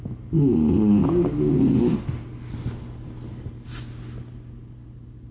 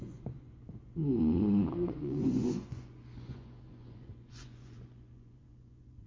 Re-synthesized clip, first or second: second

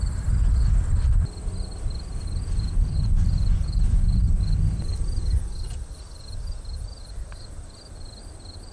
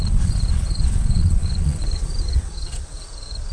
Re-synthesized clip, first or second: second